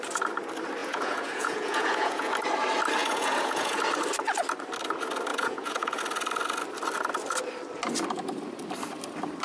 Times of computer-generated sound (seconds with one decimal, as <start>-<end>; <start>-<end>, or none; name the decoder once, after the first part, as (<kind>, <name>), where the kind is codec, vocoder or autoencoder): 0.8-2.3 (vocoder, Vocos); 3.0-3.8; 5.3-6.0